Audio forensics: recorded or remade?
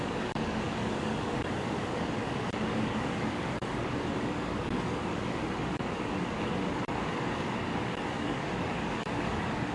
remade